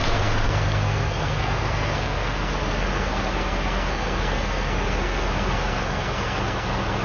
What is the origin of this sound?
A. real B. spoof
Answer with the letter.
B